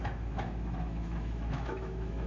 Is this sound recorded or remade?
remade